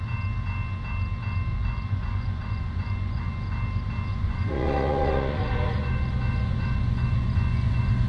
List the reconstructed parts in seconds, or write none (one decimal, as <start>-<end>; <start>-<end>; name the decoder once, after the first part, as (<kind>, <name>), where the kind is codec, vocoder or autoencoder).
1.5-3.3 (vocoder, Vocos); 4.1-8.1